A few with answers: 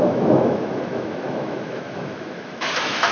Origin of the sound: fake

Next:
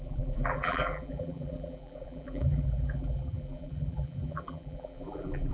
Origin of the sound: fake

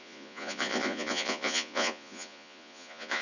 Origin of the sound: fake